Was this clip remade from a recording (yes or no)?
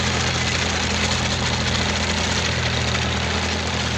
no